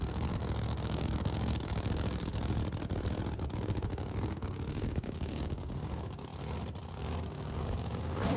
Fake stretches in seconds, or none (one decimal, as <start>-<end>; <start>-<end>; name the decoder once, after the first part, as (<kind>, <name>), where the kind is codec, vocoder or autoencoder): 0.0-2.6 (codec, DAC); 3.5-6.3; 6.8-8.4